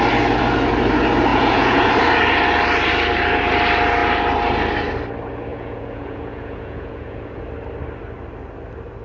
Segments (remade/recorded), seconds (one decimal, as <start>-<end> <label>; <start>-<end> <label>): 0.0-1.3 recorded; 1.3-1.9 remade; 1.9-5.5 recorded; 5.5-7.4 remade; 7.4-9.0 recorded